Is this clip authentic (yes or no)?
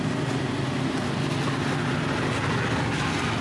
yes